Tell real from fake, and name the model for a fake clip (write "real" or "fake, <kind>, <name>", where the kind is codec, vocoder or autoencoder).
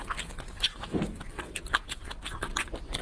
real